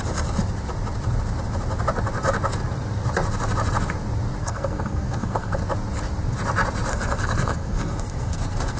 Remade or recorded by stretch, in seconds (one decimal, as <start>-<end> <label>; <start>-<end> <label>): 0.0-4.4 recorded; 4.4-5.6 remade; 5.6-6.9 recorded; 6.9-8.8 remade